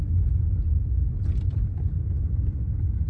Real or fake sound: real